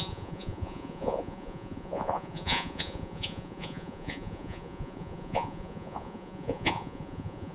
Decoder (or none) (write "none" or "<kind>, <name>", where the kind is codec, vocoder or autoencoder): vocoder, Vocos